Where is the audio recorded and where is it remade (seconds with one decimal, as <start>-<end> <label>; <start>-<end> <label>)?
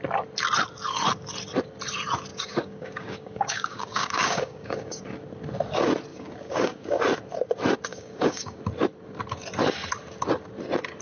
0.0-2.3 recorded; 2.3-5.0 remade; 5.0-6.1 recorded; 6.1-7.0 remade; 7.0-7.9 recorded; 7.9-8.6 remade; 8.6-11.0 recorded